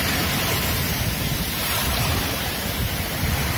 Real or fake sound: fake